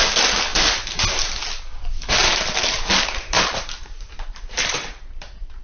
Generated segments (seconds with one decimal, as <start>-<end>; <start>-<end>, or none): 2.3-5.6